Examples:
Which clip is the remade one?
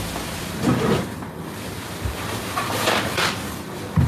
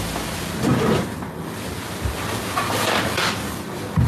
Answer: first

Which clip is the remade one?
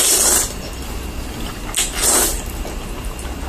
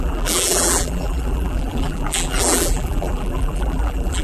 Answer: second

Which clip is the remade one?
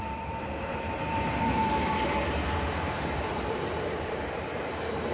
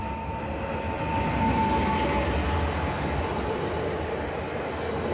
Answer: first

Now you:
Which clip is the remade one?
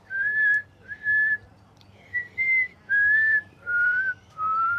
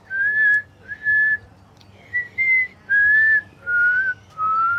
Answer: first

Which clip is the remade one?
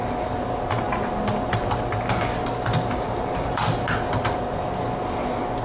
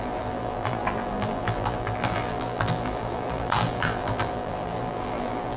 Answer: second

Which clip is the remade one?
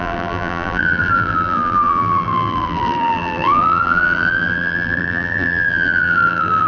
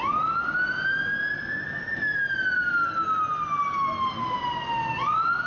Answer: first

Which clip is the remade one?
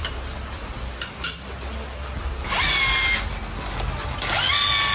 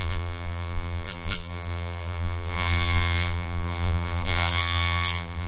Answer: second